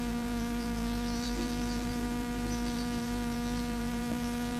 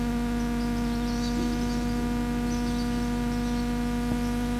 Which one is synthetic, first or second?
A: first